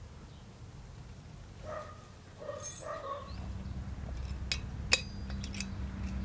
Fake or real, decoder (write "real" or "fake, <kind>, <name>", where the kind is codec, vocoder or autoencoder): real